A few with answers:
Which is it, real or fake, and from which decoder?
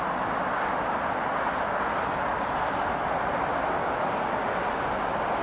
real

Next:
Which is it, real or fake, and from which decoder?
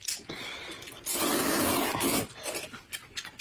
real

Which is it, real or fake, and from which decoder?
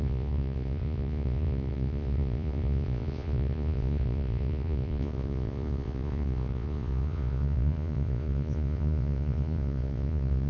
fake, vocoder, Vocos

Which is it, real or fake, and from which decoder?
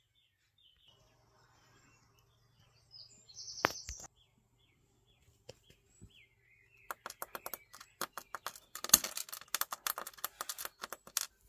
real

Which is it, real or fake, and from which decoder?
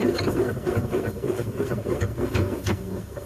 fake, codec, SNAC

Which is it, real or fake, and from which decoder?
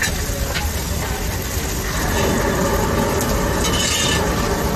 real